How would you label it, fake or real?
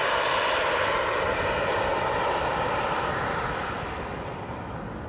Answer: real